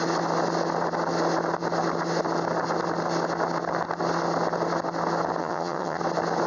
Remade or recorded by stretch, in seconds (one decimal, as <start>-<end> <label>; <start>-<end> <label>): 0.0-5.4 recorded; 5.4-6.0 remade; 6.0-6.5 recorded